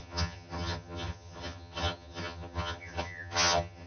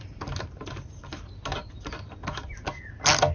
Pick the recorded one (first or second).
second